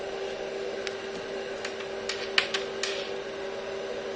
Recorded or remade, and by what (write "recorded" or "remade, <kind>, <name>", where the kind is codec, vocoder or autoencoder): recorded